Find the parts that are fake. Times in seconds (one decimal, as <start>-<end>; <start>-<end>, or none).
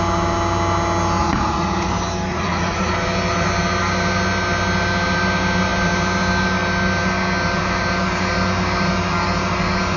1.2-1.9; 2.3-2.9